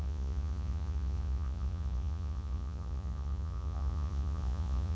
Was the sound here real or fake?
fake